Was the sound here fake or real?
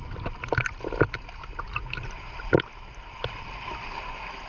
real